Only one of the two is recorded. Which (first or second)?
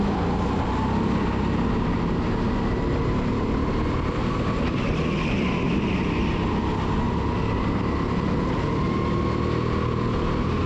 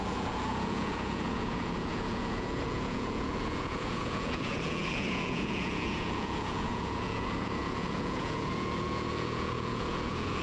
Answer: first